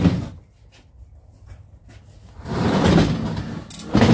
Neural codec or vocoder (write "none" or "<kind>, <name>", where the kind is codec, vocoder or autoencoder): none